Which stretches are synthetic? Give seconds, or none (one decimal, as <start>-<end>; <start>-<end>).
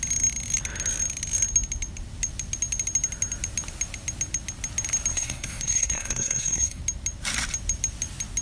5.1-6.8